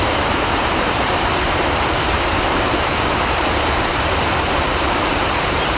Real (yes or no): no